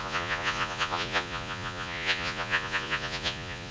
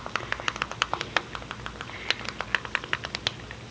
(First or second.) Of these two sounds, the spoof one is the first